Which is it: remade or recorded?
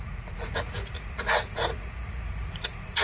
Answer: remade